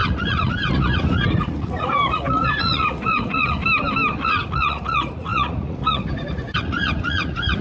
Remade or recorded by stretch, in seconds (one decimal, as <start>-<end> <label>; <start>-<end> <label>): 0.0-3.6 remade; 3.6-4.2 recorded; 4.2-7.6 remade